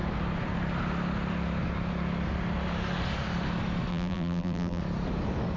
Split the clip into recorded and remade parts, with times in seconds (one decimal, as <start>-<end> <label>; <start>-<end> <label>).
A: 0.0-3.9 recorded; 3.9-4.8 remade; 4.8-5.6 recorded